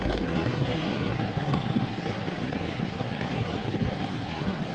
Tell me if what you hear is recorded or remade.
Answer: remade